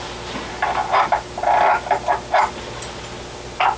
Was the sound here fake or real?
real